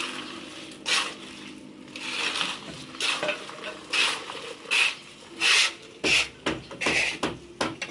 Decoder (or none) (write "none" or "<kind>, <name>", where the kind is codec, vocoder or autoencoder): none